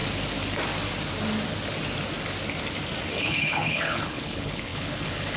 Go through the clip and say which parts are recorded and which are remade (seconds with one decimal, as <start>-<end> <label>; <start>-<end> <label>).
0.0-3.2 recorded; 3.2-5.4 remade